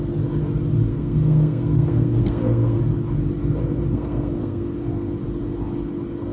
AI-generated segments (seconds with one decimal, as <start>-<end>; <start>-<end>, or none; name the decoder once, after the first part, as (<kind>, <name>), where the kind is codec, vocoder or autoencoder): 0.9-2.8 (codec, SNAC); 3.9-4.7